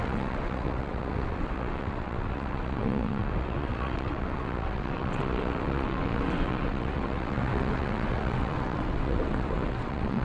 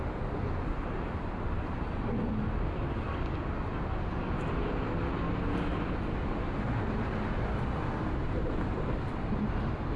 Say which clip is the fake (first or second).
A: first